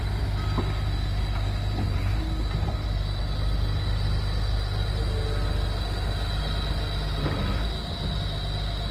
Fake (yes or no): no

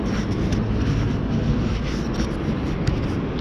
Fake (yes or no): no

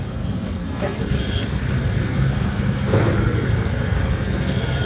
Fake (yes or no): yes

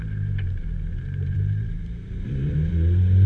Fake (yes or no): yes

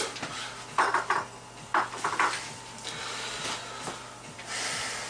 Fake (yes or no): no